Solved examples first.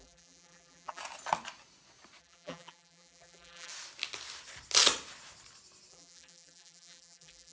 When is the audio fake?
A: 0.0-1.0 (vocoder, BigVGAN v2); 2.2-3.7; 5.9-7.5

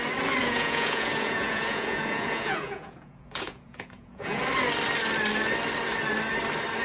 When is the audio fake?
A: 0.4-4.4 (vocoder, Vocos)

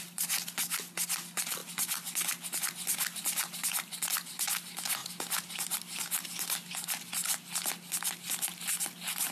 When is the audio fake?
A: none